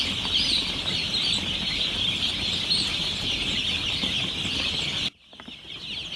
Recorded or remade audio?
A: recorded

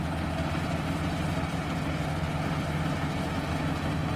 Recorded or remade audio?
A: recorded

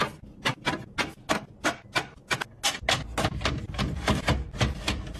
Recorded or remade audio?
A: recorded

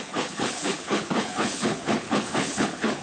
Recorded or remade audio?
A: remade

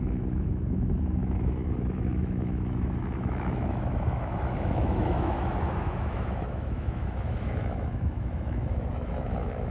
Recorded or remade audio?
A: remade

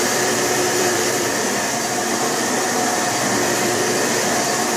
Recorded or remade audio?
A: remade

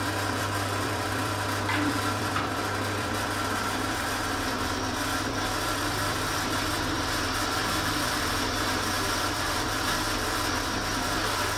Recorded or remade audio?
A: remade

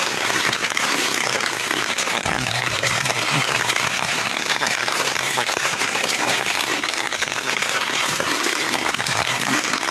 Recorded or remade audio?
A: remade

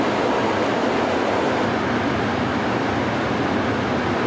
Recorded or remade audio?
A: recorded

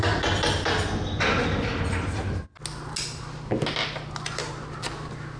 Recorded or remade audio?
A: recorded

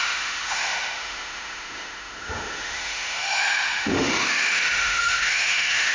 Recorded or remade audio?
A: remade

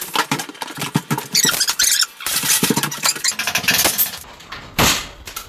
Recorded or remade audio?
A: remade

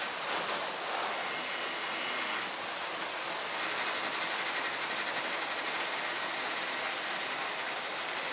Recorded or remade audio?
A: recorded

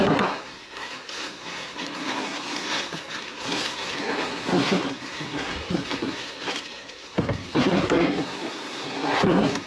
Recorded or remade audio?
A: remade